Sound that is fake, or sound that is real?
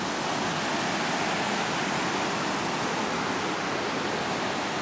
real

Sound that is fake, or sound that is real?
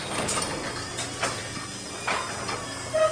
real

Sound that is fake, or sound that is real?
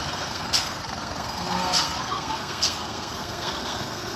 fake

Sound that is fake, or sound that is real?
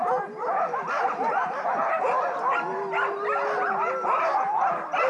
real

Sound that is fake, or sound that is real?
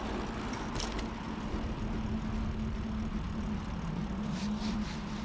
real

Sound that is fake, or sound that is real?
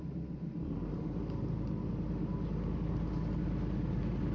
real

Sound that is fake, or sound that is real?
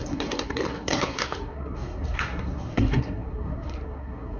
fake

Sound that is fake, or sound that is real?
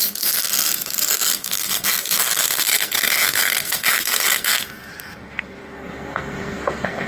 fake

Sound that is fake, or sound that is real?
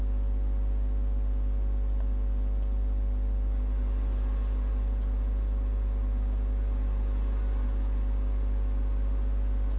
real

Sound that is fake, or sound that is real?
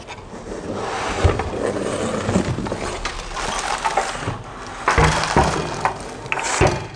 real